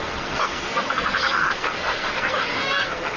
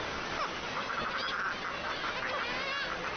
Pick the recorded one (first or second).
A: second